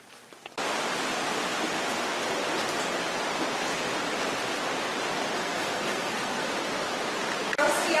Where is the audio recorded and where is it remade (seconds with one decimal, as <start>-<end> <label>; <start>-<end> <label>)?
0.0-5.4 recorded; 5.4-6.5 remade; 6.5-8.0 recorded